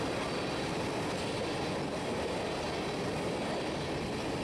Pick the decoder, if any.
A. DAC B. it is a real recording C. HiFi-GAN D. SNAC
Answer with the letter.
B